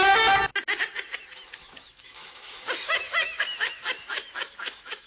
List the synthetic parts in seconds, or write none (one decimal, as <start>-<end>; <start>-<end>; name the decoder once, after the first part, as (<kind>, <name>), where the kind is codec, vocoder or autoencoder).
1.6-5.1 (autoencoder, DAC-VAE)

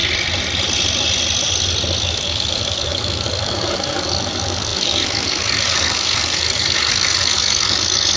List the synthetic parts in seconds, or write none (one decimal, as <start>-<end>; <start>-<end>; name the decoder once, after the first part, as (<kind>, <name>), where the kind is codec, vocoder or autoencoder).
2.0-8.2 (codec, DAC)

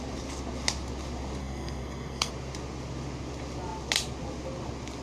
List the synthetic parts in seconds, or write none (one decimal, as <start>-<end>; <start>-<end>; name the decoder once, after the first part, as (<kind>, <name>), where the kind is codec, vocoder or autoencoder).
1.4-2.3 (codec, SNAC)

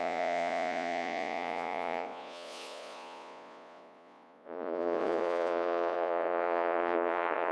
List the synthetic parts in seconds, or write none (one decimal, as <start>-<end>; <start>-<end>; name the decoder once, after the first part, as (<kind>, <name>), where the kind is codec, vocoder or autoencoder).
0.0-7.5 (vocoder, Vocos)

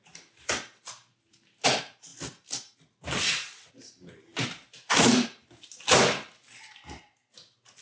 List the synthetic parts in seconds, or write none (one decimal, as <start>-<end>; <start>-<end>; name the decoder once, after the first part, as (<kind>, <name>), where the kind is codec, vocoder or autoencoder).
none

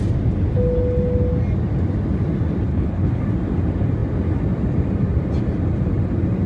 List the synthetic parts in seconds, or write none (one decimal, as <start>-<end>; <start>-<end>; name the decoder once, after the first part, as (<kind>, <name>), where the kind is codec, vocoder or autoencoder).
2.7-3.2 (codec, HILCodec)